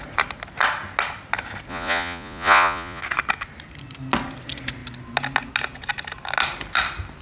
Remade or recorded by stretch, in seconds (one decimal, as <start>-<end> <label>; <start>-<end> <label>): 0.0-1.7 recorded; 1.7-3.0 remade; 3.0-7.2 recorded